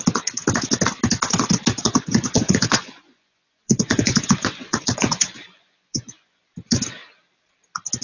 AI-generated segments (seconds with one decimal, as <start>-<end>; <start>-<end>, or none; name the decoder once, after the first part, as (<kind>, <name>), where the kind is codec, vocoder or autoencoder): 1.8-6.4 (vocoder, Vocos)